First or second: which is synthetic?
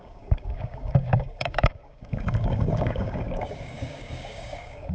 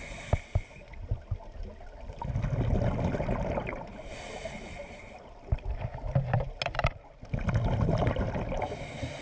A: first